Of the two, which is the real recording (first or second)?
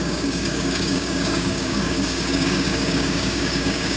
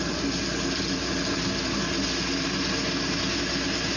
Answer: second